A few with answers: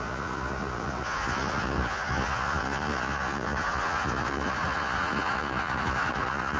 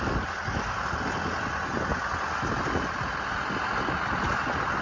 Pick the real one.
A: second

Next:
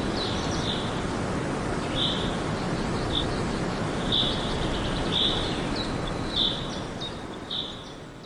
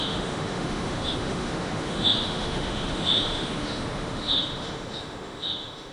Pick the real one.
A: first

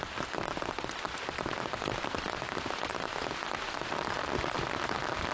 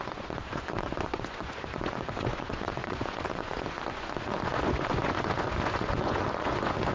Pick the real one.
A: first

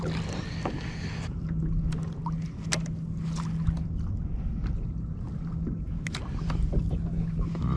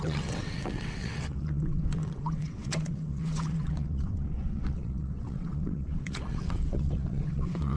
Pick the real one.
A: first